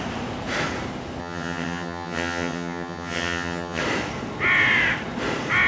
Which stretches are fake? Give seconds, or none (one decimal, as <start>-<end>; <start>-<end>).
1.2-3.8